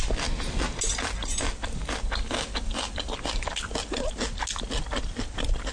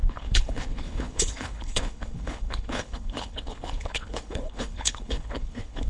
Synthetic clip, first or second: second